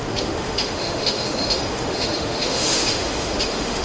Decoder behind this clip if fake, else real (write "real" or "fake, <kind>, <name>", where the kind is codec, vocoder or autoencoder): fake, autoencoder, DAC-VAE